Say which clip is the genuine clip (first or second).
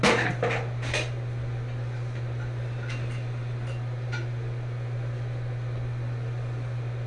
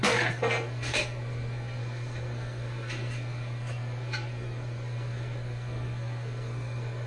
first